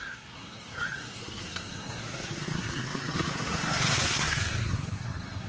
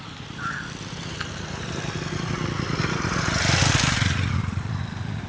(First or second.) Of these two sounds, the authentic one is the second